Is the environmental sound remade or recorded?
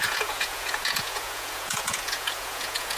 remade